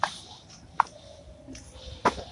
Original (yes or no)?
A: yes